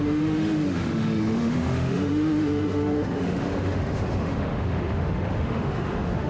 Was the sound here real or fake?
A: fake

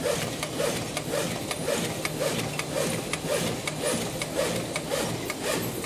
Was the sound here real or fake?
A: real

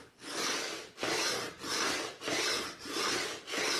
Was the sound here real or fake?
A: real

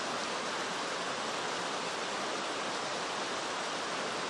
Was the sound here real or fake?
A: real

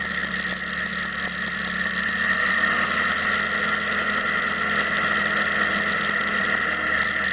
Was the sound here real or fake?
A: real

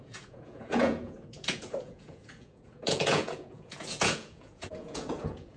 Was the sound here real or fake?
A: fake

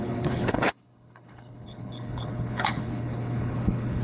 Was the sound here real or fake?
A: fake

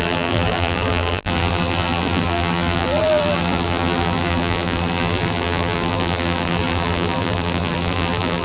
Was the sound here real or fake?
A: fake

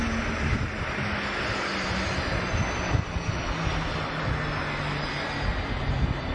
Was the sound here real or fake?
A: real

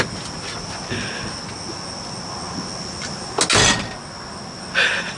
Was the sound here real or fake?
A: real